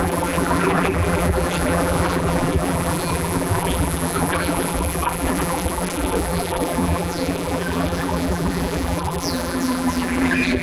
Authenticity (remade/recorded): remade